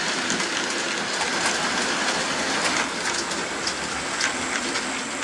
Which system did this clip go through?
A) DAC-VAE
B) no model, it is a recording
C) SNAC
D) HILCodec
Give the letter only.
B